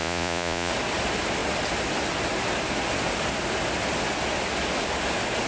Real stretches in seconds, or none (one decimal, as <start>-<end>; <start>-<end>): 0.7-5.5

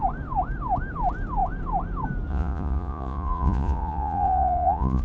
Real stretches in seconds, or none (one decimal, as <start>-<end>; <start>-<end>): 0.0-2.3

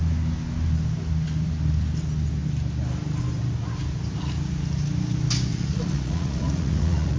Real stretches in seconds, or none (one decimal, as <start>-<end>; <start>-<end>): 0.0-5.5

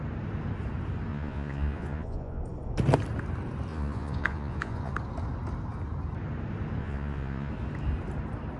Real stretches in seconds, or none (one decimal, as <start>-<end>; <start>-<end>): 0.0-1.1; 2.4-3.7; 4.9-6.8; 7.5-8.6

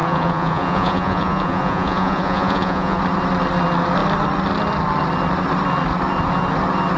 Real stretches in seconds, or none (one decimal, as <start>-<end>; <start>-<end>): 3.0-7.0

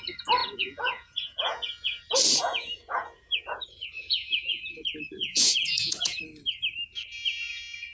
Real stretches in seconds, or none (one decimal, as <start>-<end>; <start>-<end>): 0.0-0.4; 2.0-2.4; 6.2-7.9

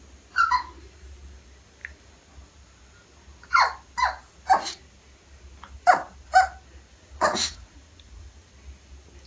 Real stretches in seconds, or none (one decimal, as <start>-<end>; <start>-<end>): 0.0-6.9; 8.5-9.3

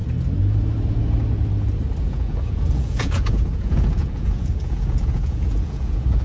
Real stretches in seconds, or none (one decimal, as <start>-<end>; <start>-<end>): 0.0-2.0